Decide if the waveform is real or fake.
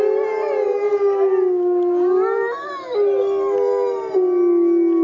real